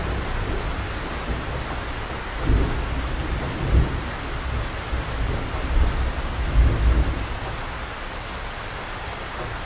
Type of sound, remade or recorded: recorded